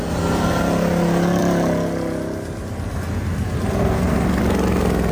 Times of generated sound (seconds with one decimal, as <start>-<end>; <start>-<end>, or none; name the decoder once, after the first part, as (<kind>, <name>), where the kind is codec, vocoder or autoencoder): 3.8-4.4 (codec, SNAC)